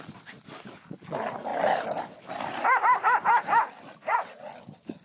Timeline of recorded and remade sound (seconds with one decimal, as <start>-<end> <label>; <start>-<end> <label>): 0.0-5.0 recorded